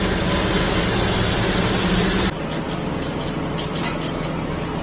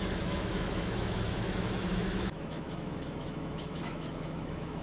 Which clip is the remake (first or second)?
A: second